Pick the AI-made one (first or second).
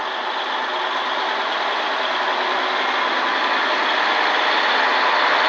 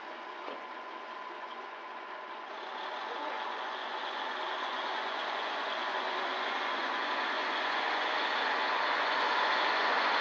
second